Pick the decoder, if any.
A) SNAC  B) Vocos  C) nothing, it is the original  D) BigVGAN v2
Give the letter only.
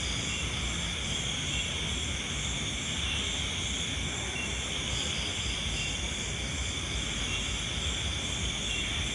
C